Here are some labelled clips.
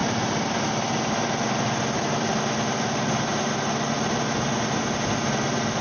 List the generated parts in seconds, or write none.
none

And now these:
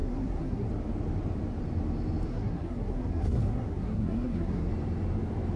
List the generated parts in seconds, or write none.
0.0-0.7 (codec, SNAC); 2.3-4.7

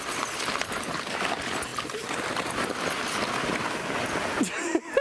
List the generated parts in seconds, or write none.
none